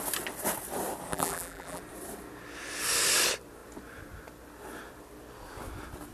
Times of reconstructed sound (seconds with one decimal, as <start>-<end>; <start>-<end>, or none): 1.1-1.8